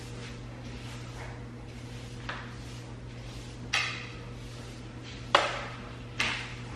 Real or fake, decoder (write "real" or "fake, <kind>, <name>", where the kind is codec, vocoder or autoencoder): real